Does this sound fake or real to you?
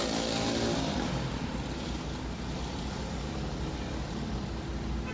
real